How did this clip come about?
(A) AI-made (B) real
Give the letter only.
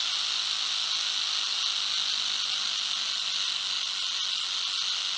B